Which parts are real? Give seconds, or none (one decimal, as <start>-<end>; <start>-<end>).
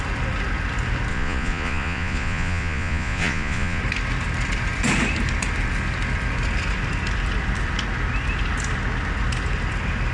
0.0-1.1; 3.8-10.1